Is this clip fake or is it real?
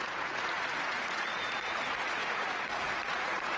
fake